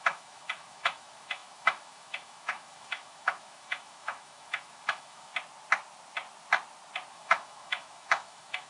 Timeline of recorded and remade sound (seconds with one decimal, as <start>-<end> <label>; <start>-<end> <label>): 0.0-5.3 remade; 5.3-7.1 recorded; 7.1-8.7 remade

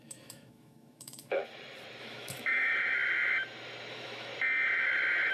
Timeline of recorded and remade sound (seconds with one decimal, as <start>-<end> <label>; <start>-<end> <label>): 0.0-1.4 remade; 1.4-2.0 recorded; 2.0-2.7 remade; 2.7-3.9 recorded; 3.9-4.3 remade; 4.3-5.3 recorded

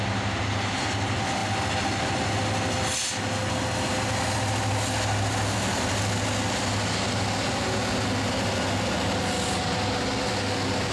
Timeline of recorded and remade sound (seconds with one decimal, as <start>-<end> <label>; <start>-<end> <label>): 0.0-10.9 recorded

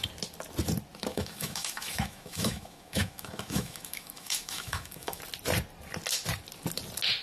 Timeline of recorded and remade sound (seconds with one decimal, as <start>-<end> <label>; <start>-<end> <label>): 0.0-1.1 recorded; 1.1-5.2 remade; 5.2-7.2 recorded

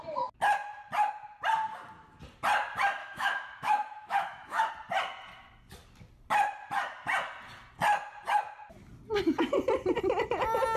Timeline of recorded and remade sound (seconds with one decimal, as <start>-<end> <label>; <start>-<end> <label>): 0.0-3.0 recorded; 3.0-4.7 remade; 4.7-10.8 recorded

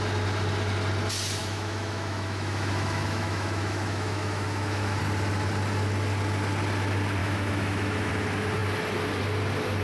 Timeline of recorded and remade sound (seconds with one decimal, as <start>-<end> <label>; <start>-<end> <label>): 0.0-1.4 recorded; 1.4-5.0 remade; 5.0-7.2 recorded; 7.2-8.1 remade; 8.1-9.8 recorded

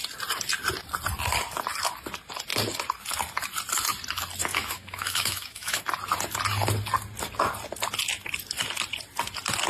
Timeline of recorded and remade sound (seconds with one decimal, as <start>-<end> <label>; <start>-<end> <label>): 0.0-4.5 recorded; 4.5-5.8 remade; 5.8-9.7 recorded

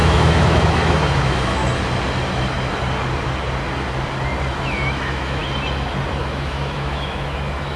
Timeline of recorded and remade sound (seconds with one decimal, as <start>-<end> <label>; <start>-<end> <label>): 0.0-1.6 remade; 1.6-4.5 recorded; 4.5-5.4 remade; 5.4-6.2 recorded; 6.2-7.8 remade